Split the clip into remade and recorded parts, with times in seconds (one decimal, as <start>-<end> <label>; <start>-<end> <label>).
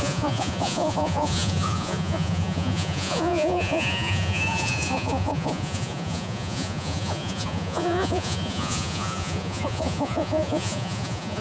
0.0-11.4 remade